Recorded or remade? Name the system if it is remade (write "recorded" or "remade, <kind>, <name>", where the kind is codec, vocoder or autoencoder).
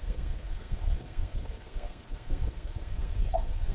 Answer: remade, codec, SNAC